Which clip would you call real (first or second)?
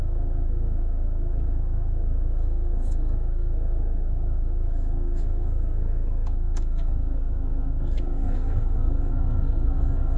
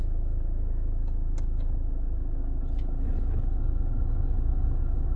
second